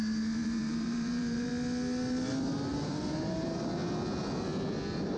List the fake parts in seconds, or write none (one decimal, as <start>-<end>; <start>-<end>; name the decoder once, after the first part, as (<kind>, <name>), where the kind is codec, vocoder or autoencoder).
0.4-1.5 (vocoder, BigVGAN v2); 2.7-3.7